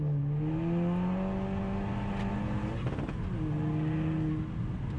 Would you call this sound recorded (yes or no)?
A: yes